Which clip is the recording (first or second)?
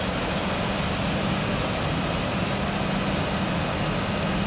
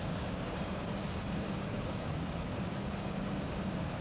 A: first